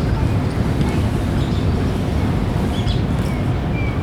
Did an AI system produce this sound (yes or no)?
no